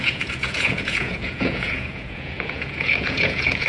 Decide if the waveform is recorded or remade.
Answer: remade